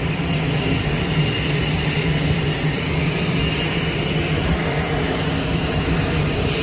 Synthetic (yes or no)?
yes